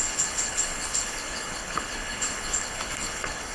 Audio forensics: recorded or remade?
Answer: remade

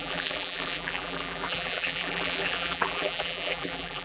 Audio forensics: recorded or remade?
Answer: remade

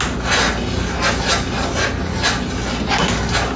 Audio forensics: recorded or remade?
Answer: recorded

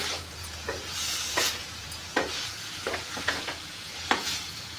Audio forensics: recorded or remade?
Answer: remade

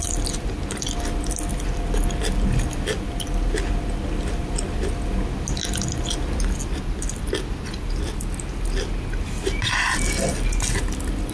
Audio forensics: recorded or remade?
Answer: recorded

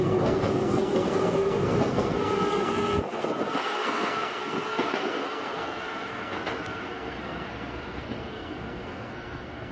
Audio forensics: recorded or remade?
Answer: remade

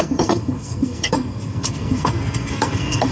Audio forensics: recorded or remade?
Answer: remade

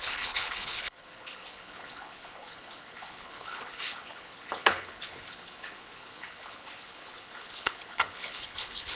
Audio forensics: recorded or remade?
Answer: remade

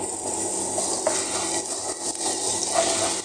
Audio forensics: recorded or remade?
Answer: recorded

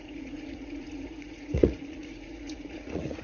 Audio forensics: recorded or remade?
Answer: remade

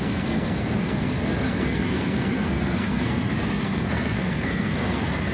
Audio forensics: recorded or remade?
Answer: remade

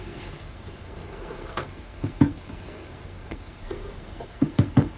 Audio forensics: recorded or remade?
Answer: remade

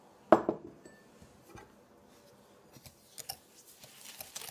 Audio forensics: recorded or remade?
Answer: recorded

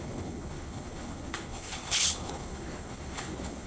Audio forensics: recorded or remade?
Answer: remade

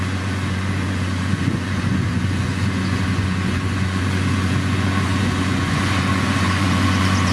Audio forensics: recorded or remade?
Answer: remade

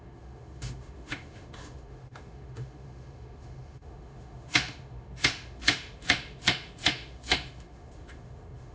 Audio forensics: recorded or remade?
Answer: remade